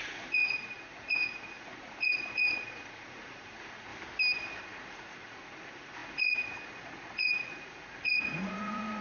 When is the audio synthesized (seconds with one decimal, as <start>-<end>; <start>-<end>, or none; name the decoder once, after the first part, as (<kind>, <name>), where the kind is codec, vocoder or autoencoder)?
0.0-3.9 (vocoder, Vocos); 4.6-9.0